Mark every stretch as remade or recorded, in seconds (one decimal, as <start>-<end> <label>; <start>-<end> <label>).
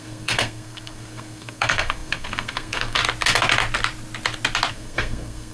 0.0-3.0 remade; 3.0-4.7 recorded; 4.7-5.5 remade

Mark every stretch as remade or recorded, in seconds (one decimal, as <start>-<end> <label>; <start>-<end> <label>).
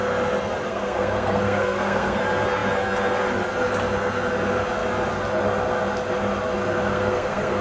0.0-0.7 recorded; 0.7-2.2 remade; 2.2-6.9 recorded; 6.9-7.6 remade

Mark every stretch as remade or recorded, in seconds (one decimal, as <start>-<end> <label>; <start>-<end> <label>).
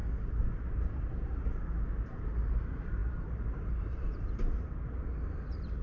0.0-1.3 recorded; 1.3-5.8 remade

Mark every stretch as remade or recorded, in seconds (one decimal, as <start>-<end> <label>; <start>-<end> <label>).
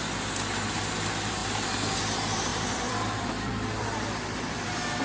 0.0-2.5 recorded; 2.5-3.5 remade; 3.5-5.0 recorded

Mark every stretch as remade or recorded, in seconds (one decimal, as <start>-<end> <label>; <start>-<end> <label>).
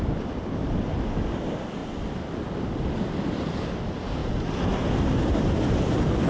0.0-4.2 recorded; 4.2-5.0 remade; 5.0-6.3 recorded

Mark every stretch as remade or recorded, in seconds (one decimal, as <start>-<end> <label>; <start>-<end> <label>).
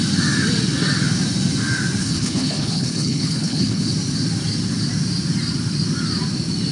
0.0-2.0 recorded; 2.0-3.8 remade; 3.8-6.7 recorded